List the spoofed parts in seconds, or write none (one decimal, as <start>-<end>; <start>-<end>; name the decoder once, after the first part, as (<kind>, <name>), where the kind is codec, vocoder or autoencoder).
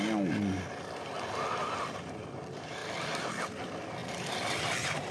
2.8-3.3 (vocoder, BigVGAN v2); 4.0-4.6